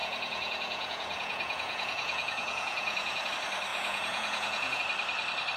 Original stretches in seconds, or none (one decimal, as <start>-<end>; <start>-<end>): 3.3-3.7; 4.8-5.6